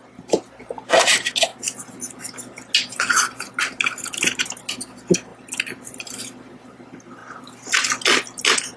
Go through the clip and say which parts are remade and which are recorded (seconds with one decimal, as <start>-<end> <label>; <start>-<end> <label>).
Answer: 0.0-8.8 recorded